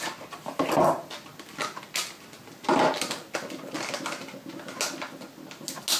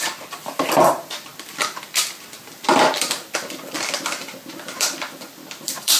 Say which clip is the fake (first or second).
second